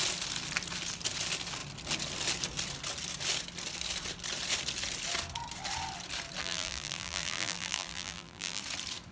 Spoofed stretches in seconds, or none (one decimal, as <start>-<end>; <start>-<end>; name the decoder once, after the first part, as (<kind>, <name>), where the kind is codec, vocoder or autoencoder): 6.4-8.6 (vocoder, BigVGAN v2)